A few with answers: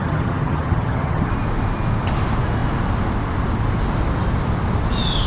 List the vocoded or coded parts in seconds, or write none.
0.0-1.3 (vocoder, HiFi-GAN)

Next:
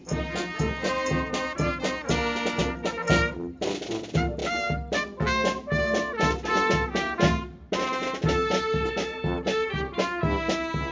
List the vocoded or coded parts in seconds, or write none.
none

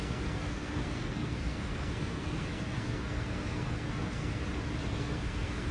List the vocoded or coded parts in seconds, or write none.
0.0-4.4 (codec, SNAC); 4.9-5.7

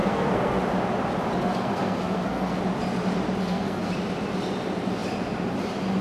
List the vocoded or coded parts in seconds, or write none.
0.0-0.6 (codec, SNAC); 1.4-2.6; 3.4-3.9